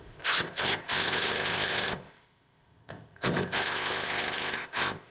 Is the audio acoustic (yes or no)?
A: no